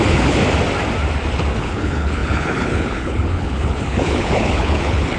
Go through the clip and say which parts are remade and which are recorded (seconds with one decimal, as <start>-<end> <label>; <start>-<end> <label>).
0.0-0.4 remade; 0.4-1.6 recorded; 1.6-5.2 remade